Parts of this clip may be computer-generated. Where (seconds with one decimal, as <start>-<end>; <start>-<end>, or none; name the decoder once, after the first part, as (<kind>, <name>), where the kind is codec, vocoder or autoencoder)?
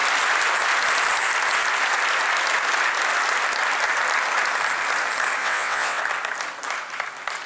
5.4-6.0 (vocoder, WaveNeXt)